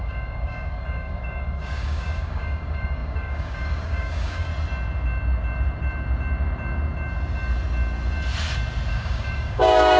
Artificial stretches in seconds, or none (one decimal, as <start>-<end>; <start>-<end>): 0.0-4.5; 8.9-10.0